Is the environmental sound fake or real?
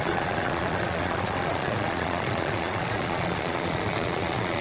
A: fake